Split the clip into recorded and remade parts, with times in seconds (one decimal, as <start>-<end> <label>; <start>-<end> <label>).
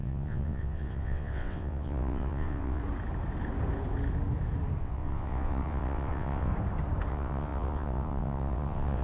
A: 0.0-2.8 remade; 2.8-4.8 recorded; 4.8-6.5 remade; 6.5-7.1 recorded; 7.1-9.0 remade